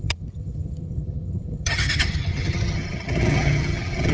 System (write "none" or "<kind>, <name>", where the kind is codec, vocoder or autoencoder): vocoder, HiFi-GAN